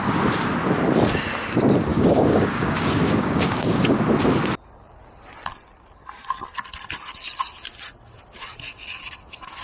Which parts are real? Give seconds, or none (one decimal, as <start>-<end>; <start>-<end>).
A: 0.0-1.9; 4.0-9.6